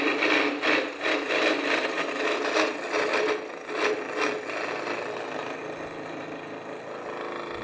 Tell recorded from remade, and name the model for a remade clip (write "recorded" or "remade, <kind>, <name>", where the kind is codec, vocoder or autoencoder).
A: recorded